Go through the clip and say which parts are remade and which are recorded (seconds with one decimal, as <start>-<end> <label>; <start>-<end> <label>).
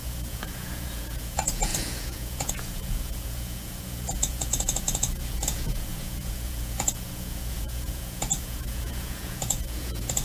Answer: 0.0-10.2 remade